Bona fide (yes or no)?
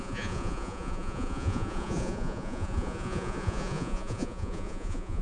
no